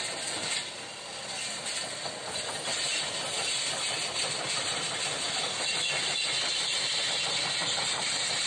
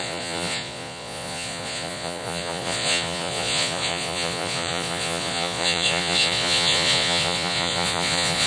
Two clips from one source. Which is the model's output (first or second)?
second